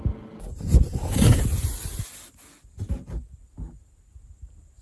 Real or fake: real